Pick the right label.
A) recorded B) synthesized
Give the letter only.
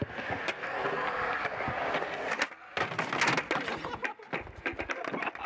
A